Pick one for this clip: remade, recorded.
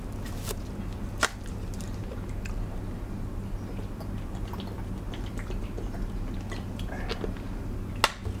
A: recorded